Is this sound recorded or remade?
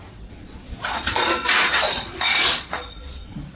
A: remade